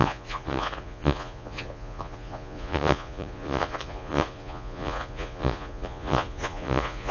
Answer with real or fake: fake